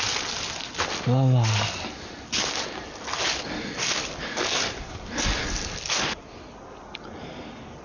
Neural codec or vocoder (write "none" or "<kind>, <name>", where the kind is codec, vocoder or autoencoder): none